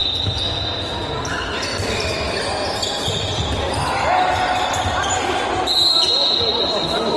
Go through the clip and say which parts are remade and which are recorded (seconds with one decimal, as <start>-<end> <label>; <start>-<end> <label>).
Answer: 0.0-7.2 recorded